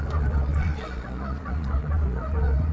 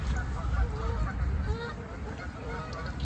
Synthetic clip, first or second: first